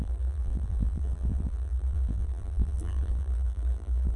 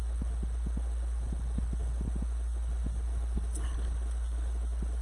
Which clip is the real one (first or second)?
second